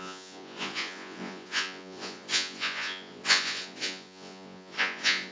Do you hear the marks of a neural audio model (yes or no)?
yes